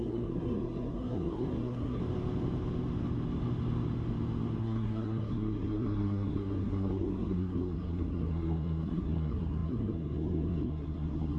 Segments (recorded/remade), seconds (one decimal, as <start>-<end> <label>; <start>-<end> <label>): 0.0-2.0 remade; 2.0-4.6 recorded; 4.6-11.4 remade